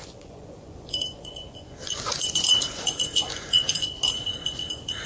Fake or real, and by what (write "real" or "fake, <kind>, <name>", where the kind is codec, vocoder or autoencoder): fake, vocoder, Vocos